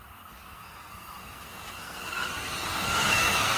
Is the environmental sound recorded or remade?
remade